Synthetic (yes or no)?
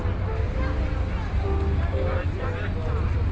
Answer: no